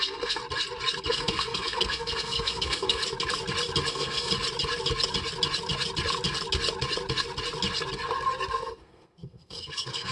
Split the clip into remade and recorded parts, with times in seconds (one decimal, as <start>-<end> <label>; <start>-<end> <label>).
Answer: 0.0-0.4 remade; 0.4-1.1 recorded; 1.1-3.0 remade; 3.0-3.9 recorded; 3.9-4.3 remade; 4.3-8.5 recorded; 8.5-10.1 remade